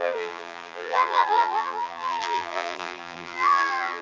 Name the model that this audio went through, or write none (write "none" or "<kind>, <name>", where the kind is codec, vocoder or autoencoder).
vocoder, BigVGAN v2